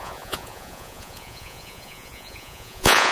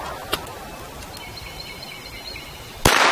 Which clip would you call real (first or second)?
second